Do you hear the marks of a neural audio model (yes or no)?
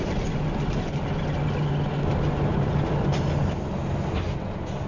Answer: no